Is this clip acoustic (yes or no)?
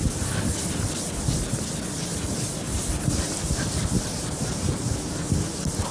yes